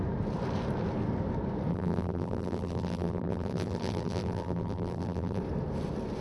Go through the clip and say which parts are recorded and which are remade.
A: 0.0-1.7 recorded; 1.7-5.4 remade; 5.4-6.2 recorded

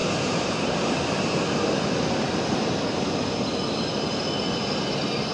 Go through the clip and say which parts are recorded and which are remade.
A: 0.0-0.9 remade; 0.9-5.3 recorded

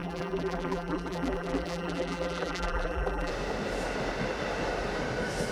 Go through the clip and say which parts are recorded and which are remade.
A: 0.0-3.3 remade; 3.3-5.5 recorded

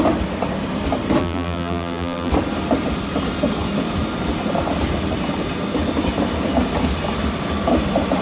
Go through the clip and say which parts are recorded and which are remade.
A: 0.0-1.2 recorded; 1.2-2.3 remade; 2.3-8.2 recorded

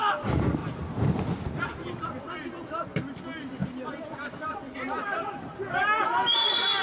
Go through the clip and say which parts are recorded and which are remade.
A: 0.0-6.8 recorded

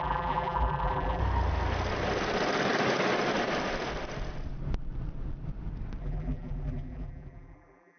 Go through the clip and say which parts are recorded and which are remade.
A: 0.0-1.2 remade; 1.2-6.0 recorded; 6.0-8.0 remade

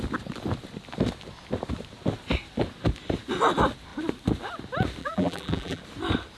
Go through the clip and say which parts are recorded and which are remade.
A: 0.0-5.0 recorded; 5.0-5.8 remade; 5.8-6.4 recorded

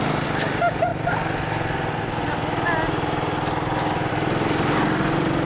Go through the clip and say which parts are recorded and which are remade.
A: 0.0-0.9 remade; 0.9-4.1 recorded; 4.1-5.4 remade